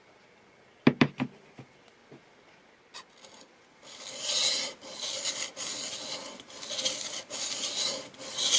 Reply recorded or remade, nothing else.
recorded